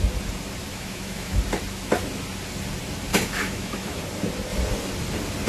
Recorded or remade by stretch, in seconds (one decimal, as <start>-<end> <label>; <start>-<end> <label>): 0.0-0.7 recorded; 0.7-1.4 remade; 1.4-3.1 recorded; 3.1-4.0 remade; 4.0-5.5 recorded